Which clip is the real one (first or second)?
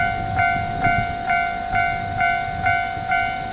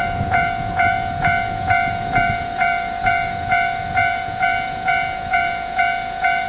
first